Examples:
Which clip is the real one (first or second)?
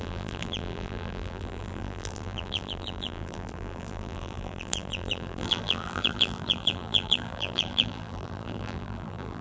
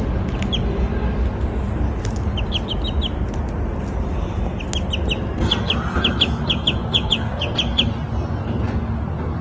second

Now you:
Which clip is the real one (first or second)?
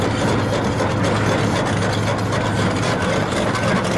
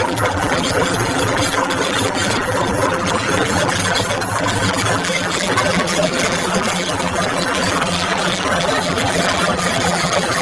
first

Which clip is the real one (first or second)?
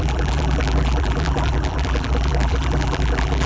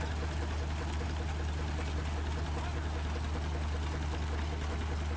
second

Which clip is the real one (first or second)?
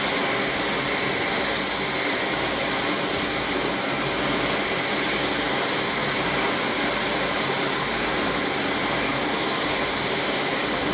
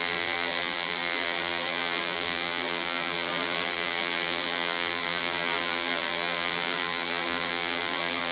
first